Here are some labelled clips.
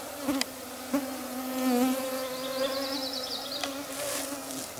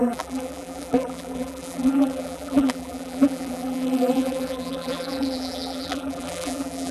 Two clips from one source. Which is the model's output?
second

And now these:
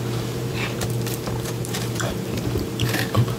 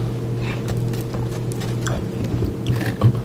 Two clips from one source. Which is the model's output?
first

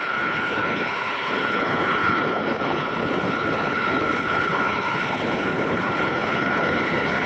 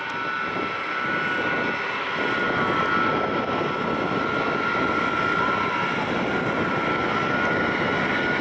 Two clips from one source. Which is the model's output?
first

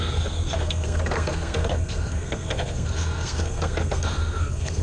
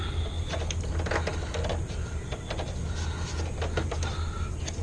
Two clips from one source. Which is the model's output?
first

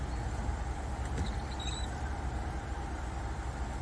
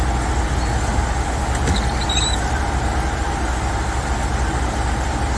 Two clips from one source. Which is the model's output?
first